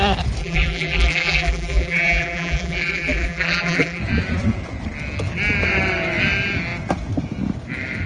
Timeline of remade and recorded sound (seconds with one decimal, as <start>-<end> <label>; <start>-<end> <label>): 0.0-0.4 recorded; 0.4-4.0 remade; 4.0-8.1 recorded